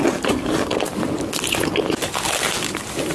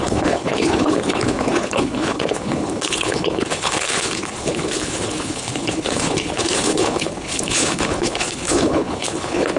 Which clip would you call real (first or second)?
first